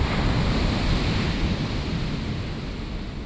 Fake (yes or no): no